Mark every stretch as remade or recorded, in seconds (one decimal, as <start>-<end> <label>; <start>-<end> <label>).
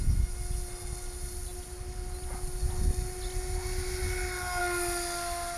0.0-5.6 recorded